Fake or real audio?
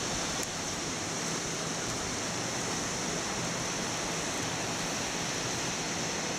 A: real